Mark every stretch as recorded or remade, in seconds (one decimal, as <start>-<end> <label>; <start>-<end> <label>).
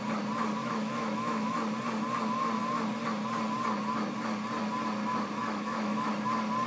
0.0-0.6 recorded; 0.6-1.5 remade; 1.5-5.4 recorded; 5.4-6.1 remade; 6.1-6.7 recorded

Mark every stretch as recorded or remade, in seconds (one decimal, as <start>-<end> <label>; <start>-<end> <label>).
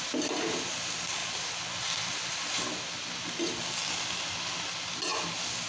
0.0-5.7 recorded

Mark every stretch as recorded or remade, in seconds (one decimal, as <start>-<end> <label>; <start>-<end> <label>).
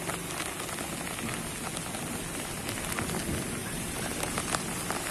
0.0-3.6 recorded; 3.6-4.5 remade; 4.5-5.1 recorded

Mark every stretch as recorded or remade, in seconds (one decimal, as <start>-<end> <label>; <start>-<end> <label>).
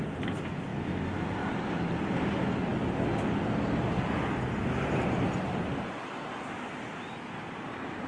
0.0-8.1 recorded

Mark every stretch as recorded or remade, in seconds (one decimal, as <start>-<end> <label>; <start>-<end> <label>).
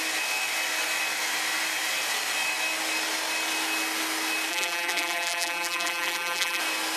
0.0-4.5 recorded; 4.5-6.6 remade; 6.6-7.0 recorded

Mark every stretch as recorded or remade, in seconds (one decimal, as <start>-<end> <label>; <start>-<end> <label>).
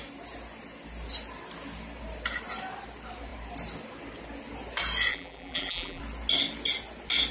0.0-5.1 recorded; 5.1-6.0 remade; 6.0-7.3 recorded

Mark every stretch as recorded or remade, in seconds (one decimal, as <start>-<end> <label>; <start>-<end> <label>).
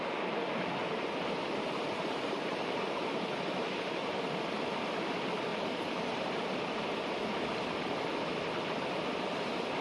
0.0-0.8 recorded; 0.8-4.1 remade; 4.1-5.5 recorded; 5.5-6.3 remade; 6.3-9.8 recorded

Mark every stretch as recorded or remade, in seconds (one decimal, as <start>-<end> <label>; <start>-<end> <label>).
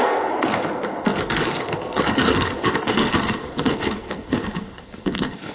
0.0-5.5 remade